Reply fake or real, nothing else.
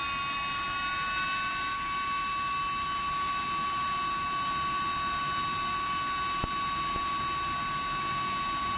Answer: real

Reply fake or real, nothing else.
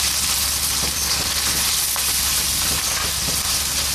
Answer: real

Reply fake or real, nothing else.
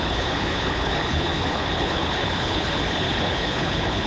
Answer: fake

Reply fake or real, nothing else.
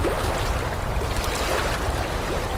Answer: real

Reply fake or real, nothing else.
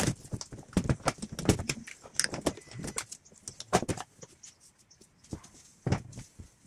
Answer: real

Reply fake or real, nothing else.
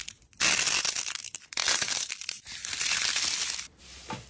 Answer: fake